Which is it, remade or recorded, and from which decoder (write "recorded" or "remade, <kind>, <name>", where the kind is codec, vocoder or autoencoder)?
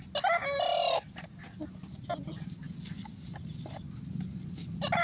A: recorded